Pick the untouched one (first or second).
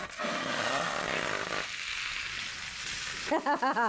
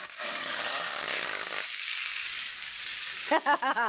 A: first